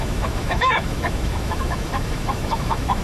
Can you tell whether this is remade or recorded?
remade